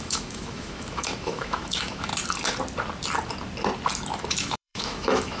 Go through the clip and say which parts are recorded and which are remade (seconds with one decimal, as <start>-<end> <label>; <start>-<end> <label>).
0.0-2.1 remade; 2.1-4.3 recorded; 4.3-5.4 remade